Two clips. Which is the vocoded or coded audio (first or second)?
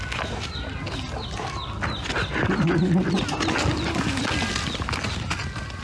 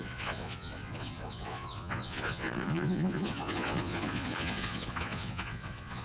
second